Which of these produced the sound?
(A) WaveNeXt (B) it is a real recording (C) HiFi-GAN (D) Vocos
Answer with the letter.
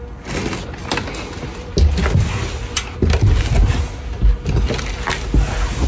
B